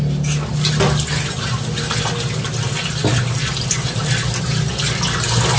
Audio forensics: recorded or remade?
recorded